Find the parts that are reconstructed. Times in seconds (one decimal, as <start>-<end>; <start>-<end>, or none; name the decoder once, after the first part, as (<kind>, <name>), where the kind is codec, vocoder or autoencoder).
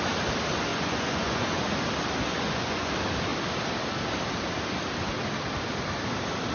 0.7-1.6 (vocoder, Vocos); 2.3-2.9